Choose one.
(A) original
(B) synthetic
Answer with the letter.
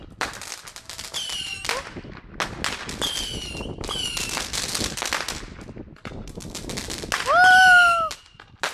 A